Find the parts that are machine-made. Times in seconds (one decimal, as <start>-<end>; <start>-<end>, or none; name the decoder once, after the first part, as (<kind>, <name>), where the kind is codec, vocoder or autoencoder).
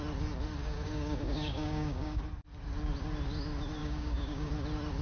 0.6-2.2 (codec, DAC); 3.8-4.5